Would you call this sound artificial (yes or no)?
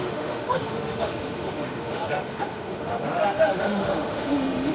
yes